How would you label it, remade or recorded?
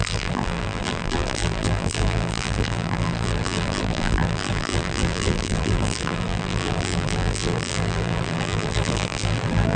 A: remade